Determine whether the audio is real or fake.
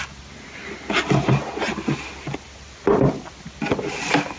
real